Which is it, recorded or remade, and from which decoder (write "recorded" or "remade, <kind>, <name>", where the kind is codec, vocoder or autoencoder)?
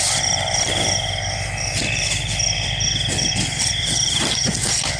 recorded